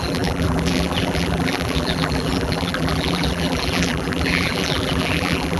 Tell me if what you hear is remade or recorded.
remade